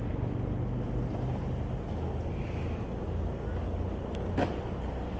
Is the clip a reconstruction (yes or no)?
no